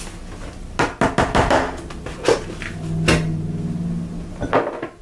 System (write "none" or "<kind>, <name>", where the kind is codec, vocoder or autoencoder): none